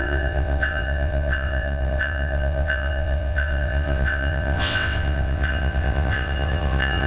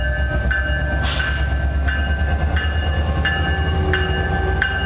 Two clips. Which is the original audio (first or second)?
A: second